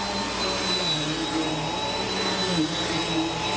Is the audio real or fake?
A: real